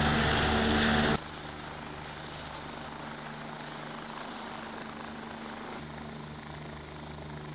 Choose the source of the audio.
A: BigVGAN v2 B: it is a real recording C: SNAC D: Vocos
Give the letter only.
B